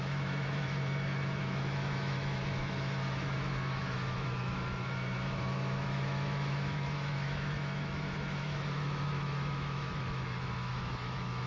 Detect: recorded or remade remade